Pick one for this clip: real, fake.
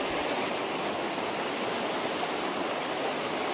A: real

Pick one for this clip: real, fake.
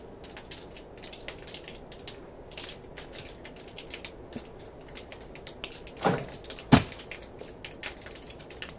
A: real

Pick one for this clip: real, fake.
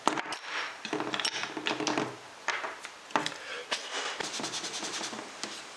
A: real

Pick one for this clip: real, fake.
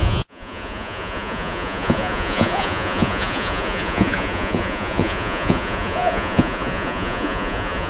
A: fake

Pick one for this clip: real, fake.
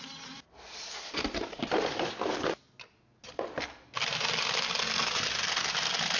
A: real